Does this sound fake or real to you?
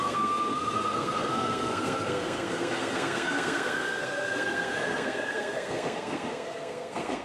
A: fake